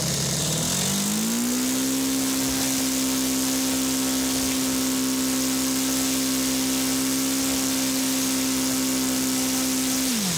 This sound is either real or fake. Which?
real